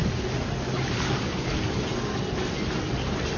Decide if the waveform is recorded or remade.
recorded